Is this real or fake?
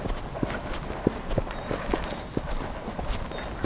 real